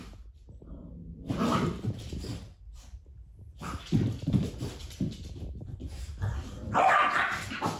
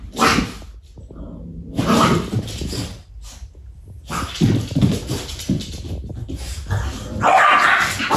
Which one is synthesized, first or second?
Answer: first